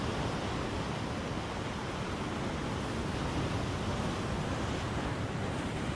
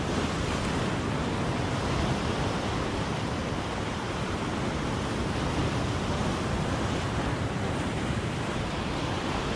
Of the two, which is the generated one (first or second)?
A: second